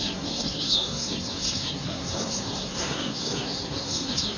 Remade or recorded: remade